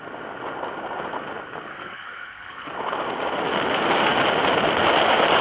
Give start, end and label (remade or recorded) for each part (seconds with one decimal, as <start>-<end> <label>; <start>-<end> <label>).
0.0-1.7 recorded; 1.7-2.7 remade; 2.7-5.4 recorded